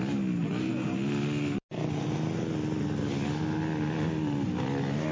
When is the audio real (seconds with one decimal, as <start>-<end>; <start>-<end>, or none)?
0.0-5.1